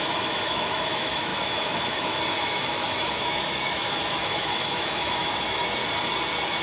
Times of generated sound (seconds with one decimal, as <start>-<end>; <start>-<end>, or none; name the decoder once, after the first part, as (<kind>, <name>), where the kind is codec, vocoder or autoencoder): 0.0-5.8 (autoencoder, DAC-VAE)